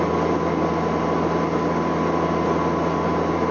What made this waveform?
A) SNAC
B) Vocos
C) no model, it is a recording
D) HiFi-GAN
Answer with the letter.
C